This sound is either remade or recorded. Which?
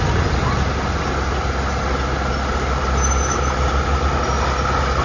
recorded